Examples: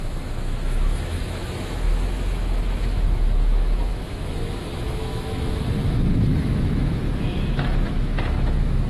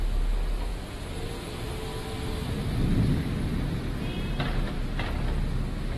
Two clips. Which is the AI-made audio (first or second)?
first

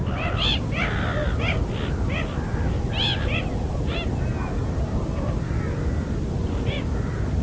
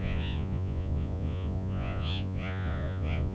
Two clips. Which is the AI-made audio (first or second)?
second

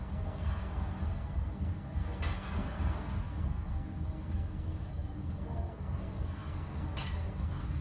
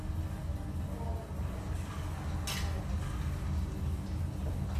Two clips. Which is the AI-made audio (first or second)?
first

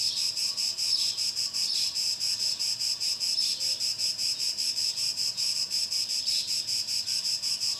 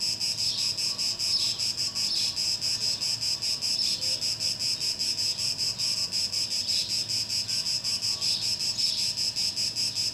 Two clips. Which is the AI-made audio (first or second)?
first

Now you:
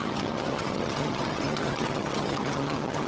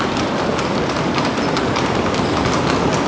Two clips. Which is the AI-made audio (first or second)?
first